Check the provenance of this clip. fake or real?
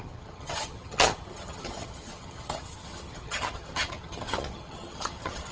fake